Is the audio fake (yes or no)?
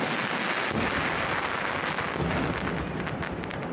no